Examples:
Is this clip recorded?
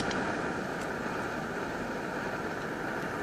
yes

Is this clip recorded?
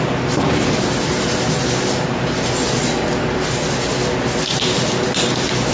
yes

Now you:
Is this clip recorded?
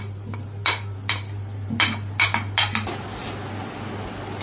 yes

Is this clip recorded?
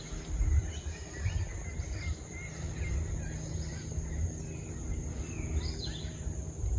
yes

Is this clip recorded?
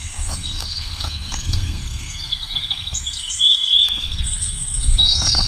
no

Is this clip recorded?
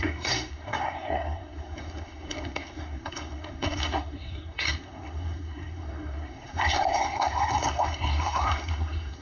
no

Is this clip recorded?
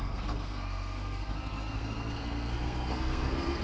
no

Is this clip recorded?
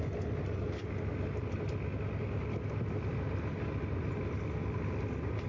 yes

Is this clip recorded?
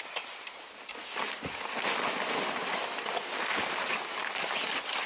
yes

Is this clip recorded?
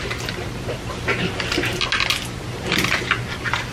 yes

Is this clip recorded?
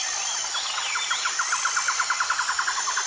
yes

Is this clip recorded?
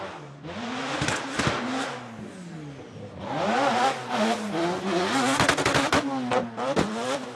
yes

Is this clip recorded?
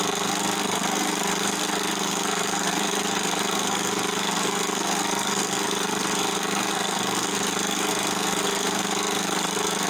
no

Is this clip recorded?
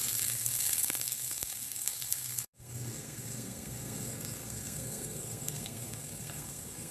no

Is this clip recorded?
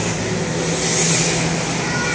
yes